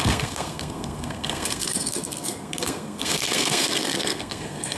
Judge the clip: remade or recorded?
remade